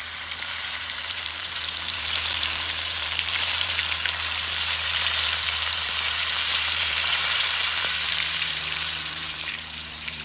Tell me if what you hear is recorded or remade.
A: remade